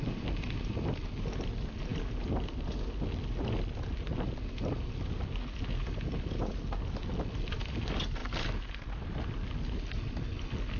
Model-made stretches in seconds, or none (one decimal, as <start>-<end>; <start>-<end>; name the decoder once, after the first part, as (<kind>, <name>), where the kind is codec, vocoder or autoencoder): none